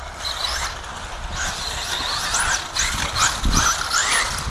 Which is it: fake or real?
real